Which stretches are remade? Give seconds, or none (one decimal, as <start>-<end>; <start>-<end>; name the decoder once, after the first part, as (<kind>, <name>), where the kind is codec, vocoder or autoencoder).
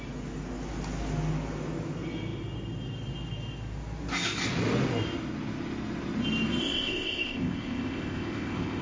6.6-8.8 (codec, ZipCodec)